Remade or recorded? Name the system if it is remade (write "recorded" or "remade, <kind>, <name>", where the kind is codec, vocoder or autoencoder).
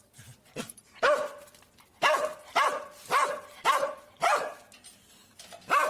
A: recorded